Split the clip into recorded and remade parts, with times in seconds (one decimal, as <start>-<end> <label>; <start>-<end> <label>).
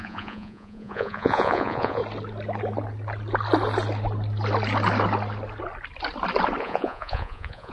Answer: 0.0-2.0 remade; 2.0-6.6 recorded; 6.6-7.7 remade